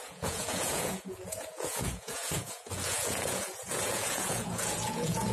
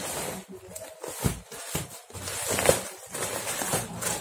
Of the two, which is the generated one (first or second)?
first